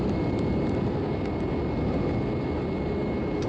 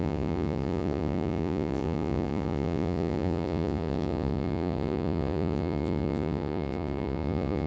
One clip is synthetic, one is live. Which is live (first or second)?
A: first